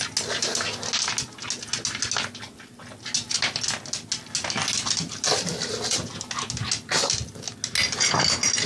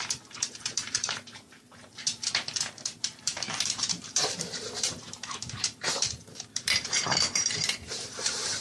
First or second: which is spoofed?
second